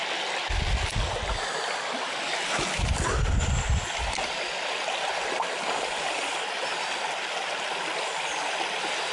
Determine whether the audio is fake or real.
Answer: real